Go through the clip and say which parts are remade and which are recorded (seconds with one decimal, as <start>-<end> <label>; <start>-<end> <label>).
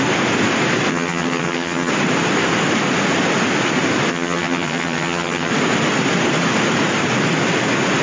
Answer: 0.0-0.9 recorded; 0.9-1.9 remade; 1.9-4.1 recorded; 4.1-5.5 remade; 5.5-8.0 recorded